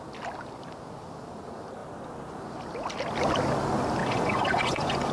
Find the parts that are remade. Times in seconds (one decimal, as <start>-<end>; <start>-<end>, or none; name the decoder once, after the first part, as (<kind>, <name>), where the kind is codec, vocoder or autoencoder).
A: 4.0-5.1 (vocoder, Vocos)